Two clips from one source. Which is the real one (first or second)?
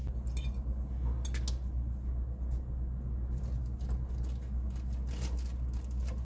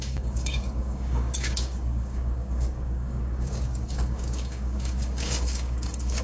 first